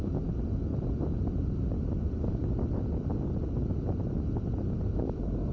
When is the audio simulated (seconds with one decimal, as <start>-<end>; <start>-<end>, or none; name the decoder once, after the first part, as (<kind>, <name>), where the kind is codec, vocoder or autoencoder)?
none